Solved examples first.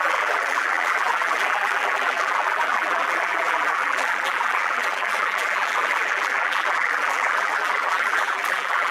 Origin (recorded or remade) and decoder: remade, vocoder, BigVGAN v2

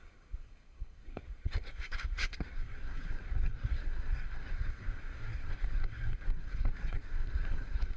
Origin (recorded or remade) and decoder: remade, codec, SNAC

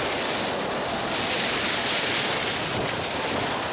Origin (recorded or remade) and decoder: recorded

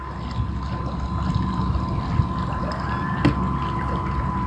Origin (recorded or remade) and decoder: recorded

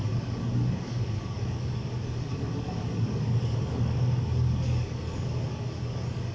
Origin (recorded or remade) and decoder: remade, codec, DAC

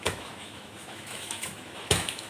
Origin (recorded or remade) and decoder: remade, autoencoder, DAC-VAE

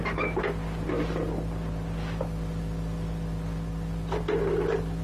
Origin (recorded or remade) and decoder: recorded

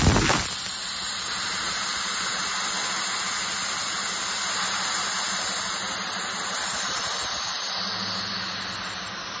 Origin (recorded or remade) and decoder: recorded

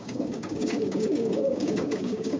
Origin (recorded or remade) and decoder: remade, codec, DAC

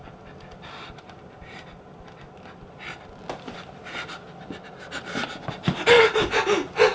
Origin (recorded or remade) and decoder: recorded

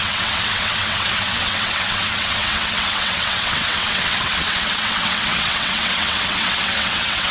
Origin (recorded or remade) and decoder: remade, vocoder, WaveNeXt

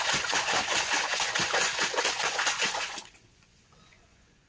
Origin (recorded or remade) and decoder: remade, vocoder, Vocos